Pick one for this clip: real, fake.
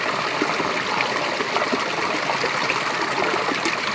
real